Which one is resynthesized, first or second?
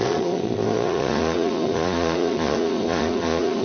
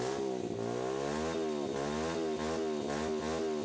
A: first